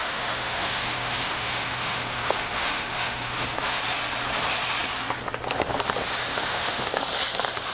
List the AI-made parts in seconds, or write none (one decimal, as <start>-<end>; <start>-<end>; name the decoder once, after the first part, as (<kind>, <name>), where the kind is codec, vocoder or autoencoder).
0.0-3.8 (autoencoder, DAC-VAE); 6.3-7.0